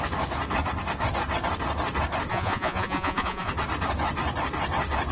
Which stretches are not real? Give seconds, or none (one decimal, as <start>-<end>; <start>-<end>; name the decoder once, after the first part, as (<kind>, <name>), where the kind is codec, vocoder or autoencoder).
2.3-3.5 (vocoder, Vocos)